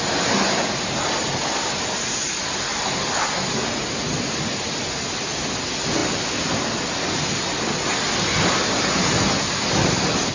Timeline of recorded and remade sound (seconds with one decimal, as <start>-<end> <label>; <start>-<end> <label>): 0.0-10.3 recorded